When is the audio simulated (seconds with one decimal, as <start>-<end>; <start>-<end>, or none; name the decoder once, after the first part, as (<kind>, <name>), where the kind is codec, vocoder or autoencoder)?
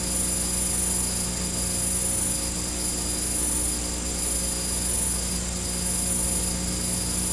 none